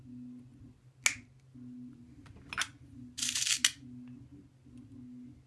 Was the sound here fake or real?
real